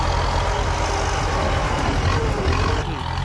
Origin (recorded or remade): recorded